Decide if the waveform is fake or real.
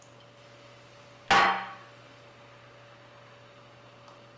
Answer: real